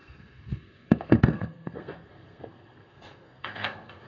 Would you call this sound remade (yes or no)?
yes